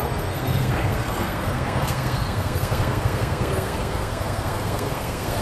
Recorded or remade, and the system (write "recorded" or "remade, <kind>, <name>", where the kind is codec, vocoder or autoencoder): remade, codec, SNAC